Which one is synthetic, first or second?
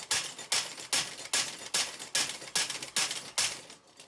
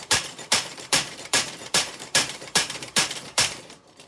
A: second